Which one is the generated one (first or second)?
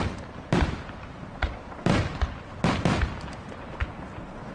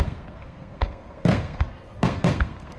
second